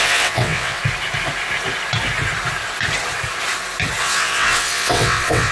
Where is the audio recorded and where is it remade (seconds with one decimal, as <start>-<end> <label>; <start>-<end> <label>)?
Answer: 0.0-0.8 remade; 0.8-4.0 recorded; 4.0-5.5 remade